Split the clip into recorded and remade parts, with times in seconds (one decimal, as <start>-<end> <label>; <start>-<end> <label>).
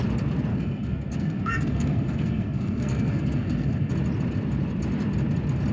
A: 0.0-0.5 recorded; 0.5-3.9 remade; 3.9-5.7 recorded